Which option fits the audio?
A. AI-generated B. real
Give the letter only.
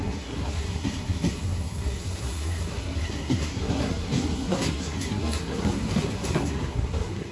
A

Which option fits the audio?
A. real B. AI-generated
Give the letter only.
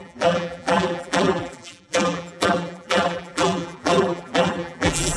B